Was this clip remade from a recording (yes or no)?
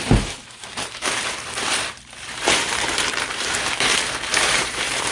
yes